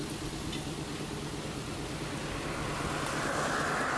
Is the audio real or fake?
real